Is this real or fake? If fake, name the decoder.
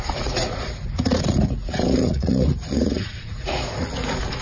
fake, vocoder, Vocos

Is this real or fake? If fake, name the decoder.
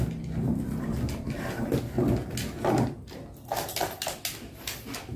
real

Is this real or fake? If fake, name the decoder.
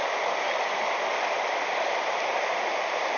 real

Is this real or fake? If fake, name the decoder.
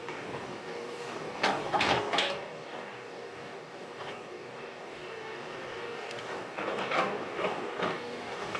fake, codec, DAC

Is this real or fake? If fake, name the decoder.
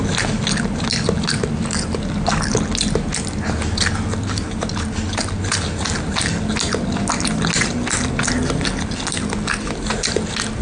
real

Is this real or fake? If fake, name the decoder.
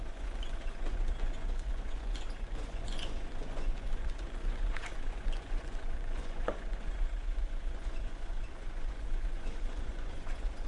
fake, vocoder, Vocos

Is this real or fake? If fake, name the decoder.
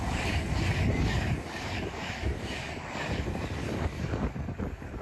fake, codec, DAC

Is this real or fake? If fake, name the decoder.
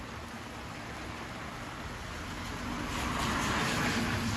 real